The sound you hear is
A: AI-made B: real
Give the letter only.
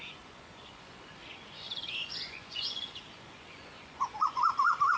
A